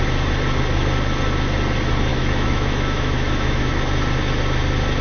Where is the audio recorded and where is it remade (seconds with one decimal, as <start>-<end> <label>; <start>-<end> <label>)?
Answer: 0.0-2.1 recorded; 2.1-3.7 remade; 3.7-5.0 recorded